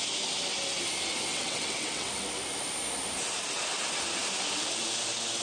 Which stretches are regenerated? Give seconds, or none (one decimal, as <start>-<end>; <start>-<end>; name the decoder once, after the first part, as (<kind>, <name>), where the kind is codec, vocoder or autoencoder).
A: 1.3-2.1 (vocoder, WaveNeXt)